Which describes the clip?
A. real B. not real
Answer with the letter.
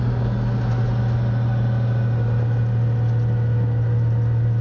A